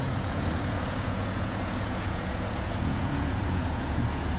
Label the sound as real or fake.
fake